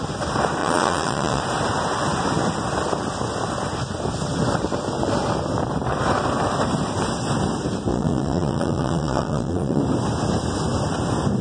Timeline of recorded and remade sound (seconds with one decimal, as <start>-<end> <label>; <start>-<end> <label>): 0.0-0.6 recorded; 0.6-1.4 remade; 1.4-7.9 recorded; 7.9-9.8 remade; 9.8-11.4 recorded